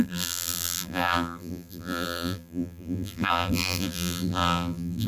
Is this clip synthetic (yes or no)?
yes